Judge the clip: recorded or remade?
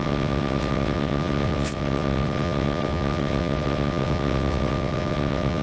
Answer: remade